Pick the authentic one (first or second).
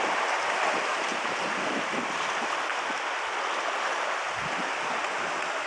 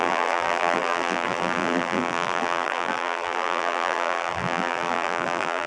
first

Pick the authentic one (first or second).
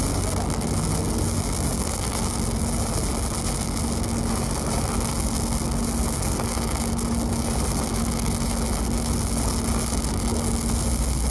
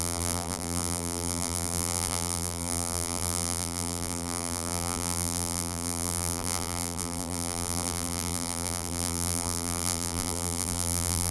first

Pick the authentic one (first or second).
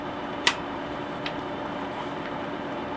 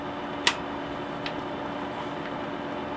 second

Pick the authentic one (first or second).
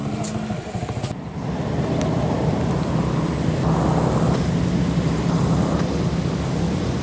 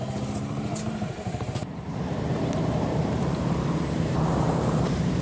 first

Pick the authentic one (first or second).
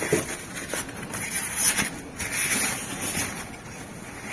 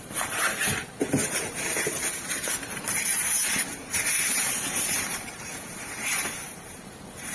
first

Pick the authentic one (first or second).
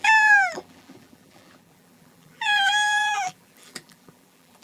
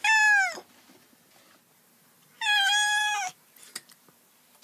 second